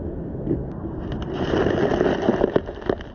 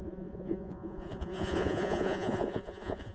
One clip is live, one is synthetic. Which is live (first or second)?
first